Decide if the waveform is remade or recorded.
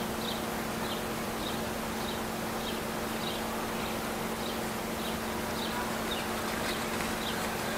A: recorded